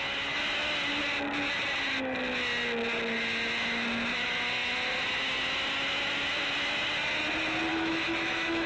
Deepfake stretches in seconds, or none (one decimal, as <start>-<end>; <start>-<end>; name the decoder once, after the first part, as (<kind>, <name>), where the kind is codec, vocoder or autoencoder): 7.7-8.7 (autoencoder, DAC-VAE)